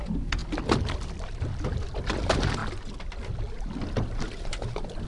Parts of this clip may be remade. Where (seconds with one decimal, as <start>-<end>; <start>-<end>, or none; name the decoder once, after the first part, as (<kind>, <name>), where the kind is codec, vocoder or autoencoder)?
none

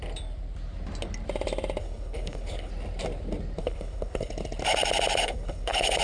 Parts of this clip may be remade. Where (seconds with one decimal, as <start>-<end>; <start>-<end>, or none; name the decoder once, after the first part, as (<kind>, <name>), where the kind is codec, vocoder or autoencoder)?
1.8-2.7 (codec, HILCodec); 3.6-4.3; 5.2-6.0

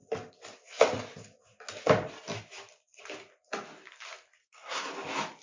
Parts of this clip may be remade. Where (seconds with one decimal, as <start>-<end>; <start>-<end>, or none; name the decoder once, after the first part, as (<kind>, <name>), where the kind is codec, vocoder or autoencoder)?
4.4-4.9 (codec, SNAC)

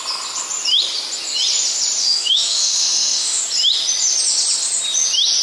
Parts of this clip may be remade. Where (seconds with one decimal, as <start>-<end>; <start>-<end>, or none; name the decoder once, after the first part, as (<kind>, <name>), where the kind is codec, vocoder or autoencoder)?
2.0-3.4 (autoencoder, DAC-VAE)

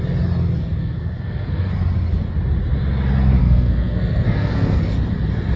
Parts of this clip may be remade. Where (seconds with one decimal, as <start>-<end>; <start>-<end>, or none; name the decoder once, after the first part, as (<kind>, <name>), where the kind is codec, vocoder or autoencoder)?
0.8-1.7 (codec, SNAC); 3.4-4.8

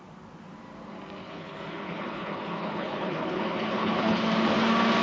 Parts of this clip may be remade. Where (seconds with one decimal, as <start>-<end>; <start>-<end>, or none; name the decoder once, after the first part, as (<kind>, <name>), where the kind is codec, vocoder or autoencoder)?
1.2-4.2 (codec, HILCodec)

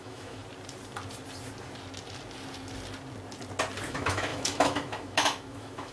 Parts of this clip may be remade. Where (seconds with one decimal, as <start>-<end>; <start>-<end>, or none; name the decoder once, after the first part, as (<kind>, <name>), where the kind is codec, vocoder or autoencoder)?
0.0-0.4 (autoencoder, DAC-VAE); 3.9-5.9